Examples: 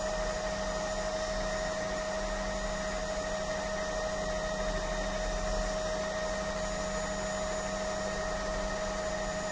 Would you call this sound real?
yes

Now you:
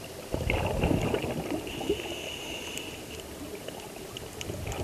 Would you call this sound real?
yes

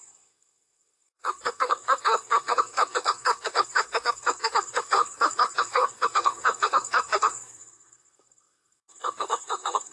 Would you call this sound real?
no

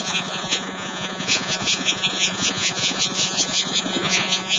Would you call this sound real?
no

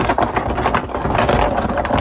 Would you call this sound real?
yes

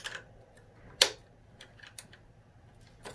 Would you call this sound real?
yes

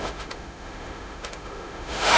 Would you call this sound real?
no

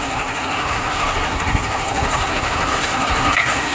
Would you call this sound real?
no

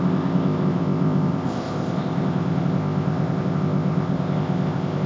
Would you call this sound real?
no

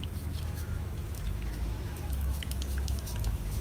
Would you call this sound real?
no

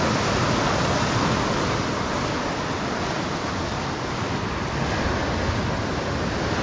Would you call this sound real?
yes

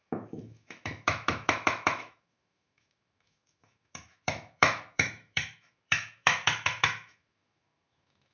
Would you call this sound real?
no